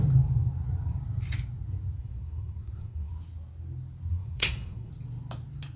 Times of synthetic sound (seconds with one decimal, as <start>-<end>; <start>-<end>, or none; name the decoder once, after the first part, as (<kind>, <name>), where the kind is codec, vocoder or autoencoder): 2.0-3.1 (codec, SNAC); 4.1-4.9